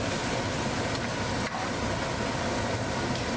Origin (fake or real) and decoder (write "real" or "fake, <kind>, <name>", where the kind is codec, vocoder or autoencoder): real